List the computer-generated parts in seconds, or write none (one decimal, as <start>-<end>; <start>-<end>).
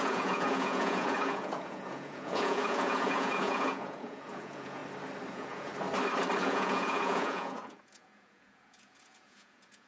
0.0-4.8; 5.3-5.7; 6.4-9.9